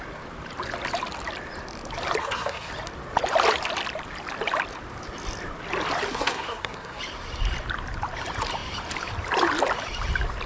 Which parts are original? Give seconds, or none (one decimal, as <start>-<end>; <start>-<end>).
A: 0.0-2.2; 2.7-6.1; 7.0-10.5